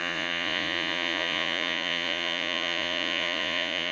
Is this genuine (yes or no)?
no